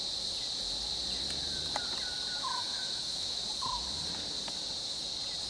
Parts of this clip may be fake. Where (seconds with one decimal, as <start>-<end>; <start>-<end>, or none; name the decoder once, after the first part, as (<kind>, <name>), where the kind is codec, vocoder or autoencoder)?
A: 2.4-3.4 (autoencoder, DAC-VAE)